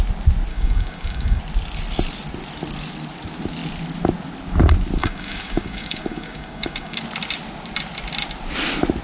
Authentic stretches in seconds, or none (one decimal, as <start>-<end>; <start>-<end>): 0.0-0.5; 1.4-5.0; 7.0-9.0